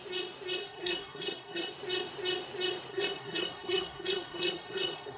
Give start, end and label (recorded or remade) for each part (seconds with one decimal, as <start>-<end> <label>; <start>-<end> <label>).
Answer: 0.0-0.6 recorded; 0.6-1.7 remade; 1.7-2.9 recorded; 2.9-5.2 remade